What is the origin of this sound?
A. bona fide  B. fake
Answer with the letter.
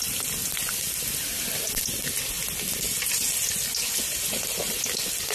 A